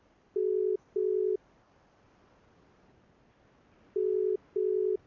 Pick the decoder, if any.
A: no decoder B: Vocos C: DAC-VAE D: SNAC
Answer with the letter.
A